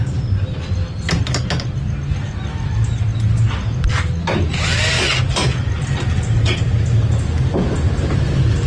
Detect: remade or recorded recorded